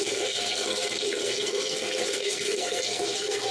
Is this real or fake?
fake